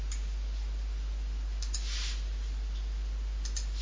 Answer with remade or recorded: recorded